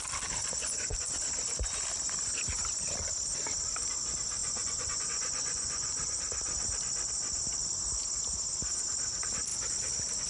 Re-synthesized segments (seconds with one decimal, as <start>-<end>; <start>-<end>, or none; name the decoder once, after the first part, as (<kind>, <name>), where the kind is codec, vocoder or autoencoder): 0.4-1.1 (vocoder, Vocos); 4.4-6.2